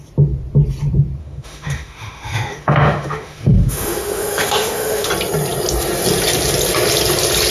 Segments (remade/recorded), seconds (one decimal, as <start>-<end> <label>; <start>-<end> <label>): 0.0-1.2 recorded; 1.2-5.1 remade; 5.1-7.5 recorded